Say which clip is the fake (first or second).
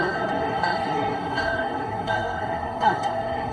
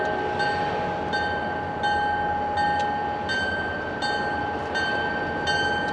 first